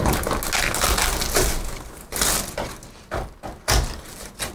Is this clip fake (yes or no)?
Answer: no